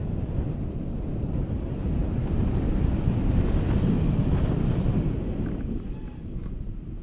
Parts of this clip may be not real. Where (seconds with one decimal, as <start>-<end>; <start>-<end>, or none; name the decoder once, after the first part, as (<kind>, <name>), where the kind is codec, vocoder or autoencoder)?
2.0-6.1 (vocoder, BigVGAN v2)